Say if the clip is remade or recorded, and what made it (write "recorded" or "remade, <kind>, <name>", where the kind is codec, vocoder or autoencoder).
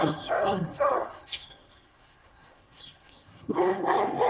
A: remade, codec, SNAC